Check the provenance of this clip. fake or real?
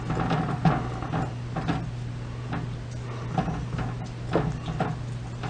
real